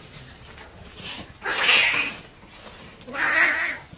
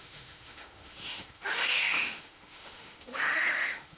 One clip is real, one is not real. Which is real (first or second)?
first